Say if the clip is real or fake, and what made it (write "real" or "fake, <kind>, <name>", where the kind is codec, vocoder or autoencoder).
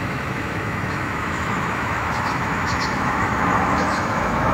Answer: fake, autoencoder, DAC-VAE